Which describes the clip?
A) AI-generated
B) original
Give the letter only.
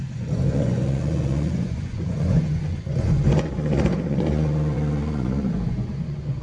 A